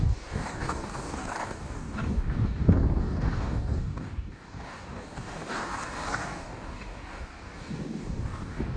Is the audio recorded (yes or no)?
no